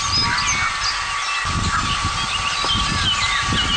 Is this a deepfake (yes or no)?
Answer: no